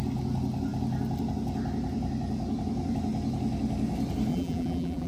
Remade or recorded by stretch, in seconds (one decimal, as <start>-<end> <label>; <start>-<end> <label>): 0.0-4.3 recorded; 4.3-5.1 remade